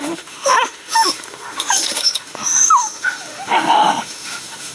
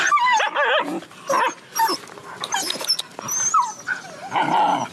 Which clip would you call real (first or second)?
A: second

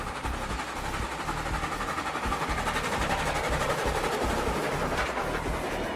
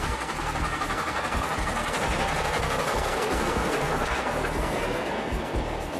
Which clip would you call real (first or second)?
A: first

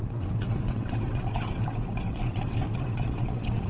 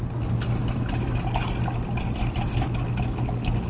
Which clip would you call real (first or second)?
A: second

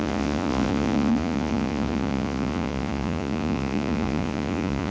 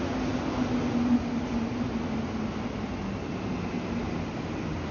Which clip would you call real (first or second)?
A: second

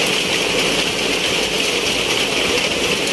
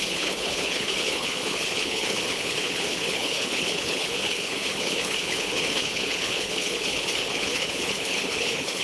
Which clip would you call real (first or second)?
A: first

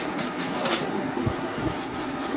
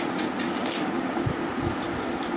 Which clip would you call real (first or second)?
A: second